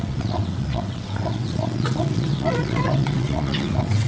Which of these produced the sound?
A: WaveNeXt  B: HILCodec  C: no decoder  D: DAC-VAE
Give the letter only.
A